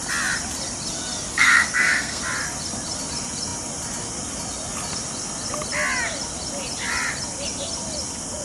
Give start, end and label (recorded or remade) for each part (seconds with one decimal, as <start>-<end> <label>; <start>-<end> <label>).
0.0-1.3 recorded; 1.3-2.2 remade; 2.2-8.4 recorded